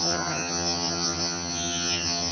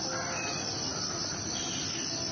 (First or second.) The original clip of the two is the second